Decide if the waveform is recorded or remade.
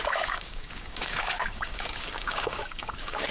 remade